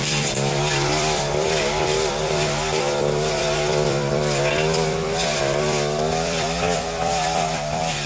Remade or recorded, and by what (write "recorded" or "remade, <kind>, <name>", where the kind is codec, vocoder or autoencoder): remade, vocoder, BigVGAN v2